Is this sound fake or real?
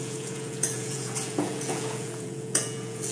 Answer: fake